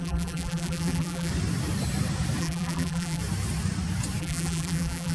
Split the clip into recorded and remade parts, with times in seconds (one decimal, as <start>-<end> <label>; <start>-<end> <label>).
0.0-1.3 remade; 1.3-2.4 recorded; 2.4-3.2 remade; 3.2-4.2 recorded; 4.2-5.1 remade